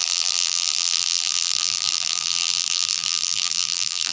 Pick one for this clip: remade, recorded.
remade